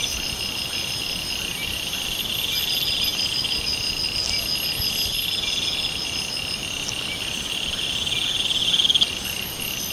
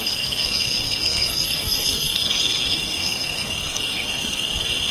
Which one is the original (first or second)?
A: first